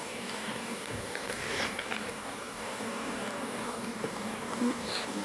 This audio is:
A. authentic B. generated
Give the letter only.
B